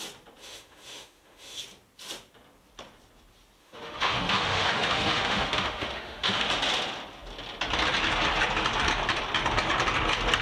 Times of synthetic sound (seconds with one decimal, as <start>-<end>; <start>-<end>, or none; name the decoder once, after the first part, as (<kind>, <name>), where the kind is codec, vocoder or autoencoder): 0.4-1.6 (autoencoder, DAC-VAE); 3.6-6.5